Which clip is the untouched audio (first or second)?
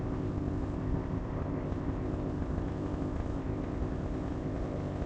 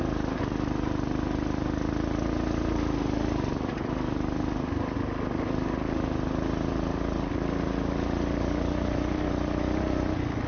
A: second